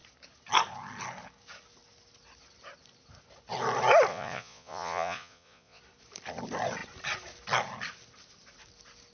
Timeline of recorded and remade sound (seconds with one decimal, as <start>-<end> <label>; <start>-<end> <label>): 0.0-4.1 recorded; 4.1-5.8 remade; 5.8-9.1 recorded